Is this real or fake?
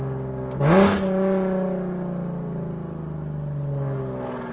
real